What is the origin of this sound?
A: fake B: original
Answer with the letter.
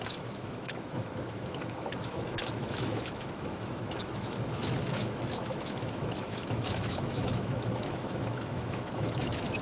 A